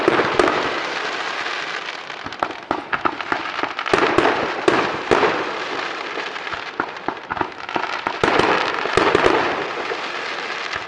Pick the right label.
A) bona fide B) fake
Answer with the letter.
A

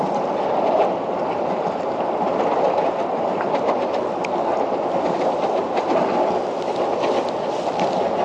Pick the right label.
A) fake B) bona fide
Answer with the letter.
B